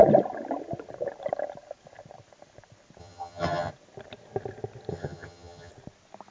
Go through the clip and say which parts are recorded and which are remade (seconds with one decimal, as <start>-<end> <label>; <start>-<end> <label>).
0.0-3.0 recorded; 3.0-3.7 remade; 3.7-4.9 recorded; 4.9-5.7 remade; 5.7-6.3 recorded